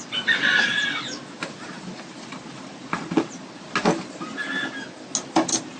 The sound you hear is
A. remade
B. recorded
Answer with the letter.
B